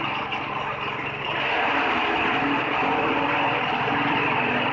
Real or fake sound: fake